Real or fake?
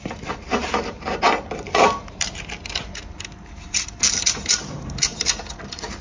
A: fake